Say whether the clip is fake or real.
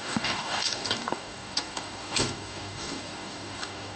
fake